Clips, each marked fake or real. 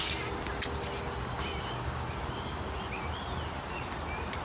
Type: real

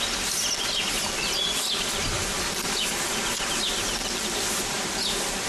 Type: real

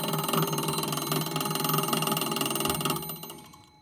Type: real